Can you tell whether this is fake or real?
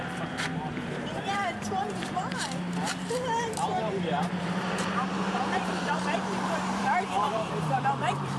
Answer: fake